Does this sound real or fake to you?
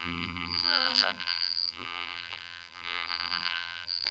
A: fake